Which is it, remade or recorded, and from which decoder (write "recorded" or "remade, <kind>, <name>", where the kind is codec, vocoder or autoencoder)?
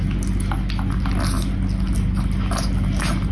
recorded